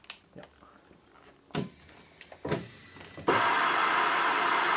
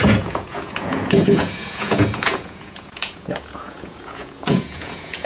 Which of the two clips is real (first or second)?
first